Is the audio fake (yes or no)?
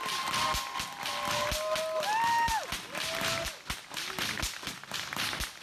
no